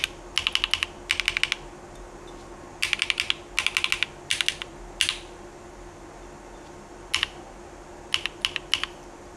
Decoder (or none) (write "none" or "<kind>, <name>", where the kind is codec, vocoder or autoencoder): none